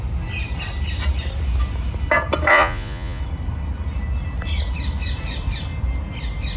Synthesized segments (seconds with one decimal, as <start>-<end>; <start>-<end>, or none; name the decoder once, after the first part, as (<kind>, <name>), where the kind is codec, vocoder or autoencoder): 2.5-3.2 (vocoder, Vocos)